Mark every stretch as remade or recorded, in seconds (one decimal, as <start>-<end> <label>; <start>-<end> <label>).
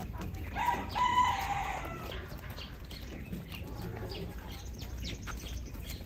0.0-0.5 remade; 0.5-6.1 recorded